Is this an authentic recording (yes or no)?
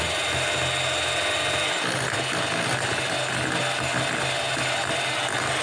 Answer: yes